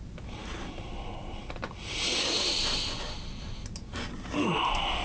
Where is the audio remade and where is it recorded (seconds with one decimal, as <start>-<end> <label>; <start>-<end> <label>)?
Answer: 0.0-5.0 recorded